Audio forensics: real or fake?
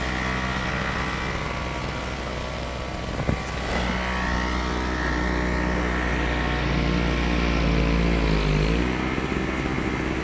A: real